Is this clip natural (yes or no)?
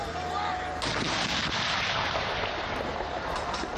yes